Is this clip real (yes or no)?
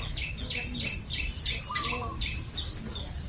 yes